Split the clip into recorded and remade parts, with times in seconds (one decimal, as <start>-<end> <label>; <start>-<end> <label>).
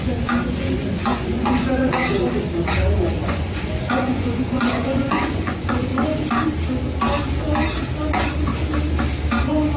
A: 0.0-2.0 remade; 2.0-2.7 recorded; 2.7-5.9 remade; 5.9-8.1 recorded; 8.1-8.5 remade; 8.5-9.8 recorded